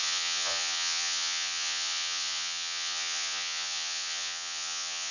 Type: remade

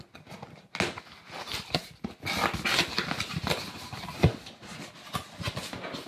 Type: recorded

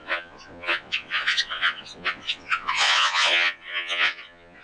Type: remade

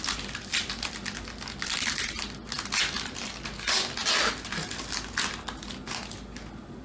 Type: recorded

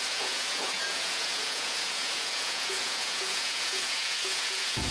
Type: remade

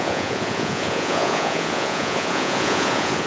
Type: remade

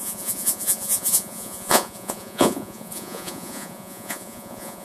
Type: remade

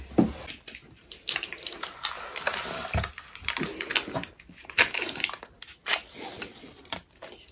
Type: recorded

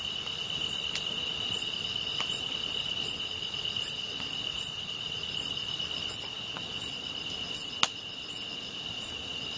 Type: recorded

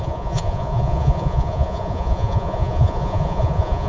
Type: remade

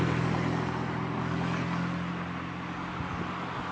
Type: recorded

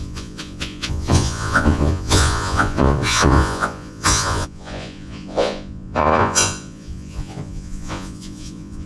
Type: remade